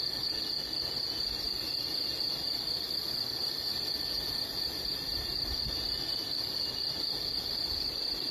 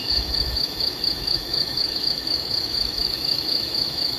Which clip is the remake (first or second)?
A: second